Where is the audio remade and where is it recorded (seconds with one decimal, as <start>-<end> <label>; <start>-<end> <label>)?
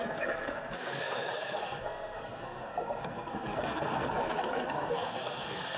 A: 0.0-5.8 remade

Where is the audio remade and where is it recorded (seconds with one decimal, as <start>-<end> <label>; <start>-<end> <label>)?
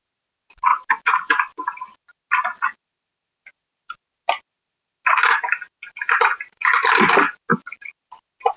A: 0.0-8.6 recorded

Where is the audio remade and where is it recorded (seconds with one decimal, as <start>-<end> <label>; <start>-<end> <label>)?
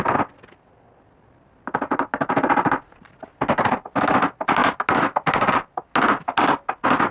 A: 0.0-7.1 recorded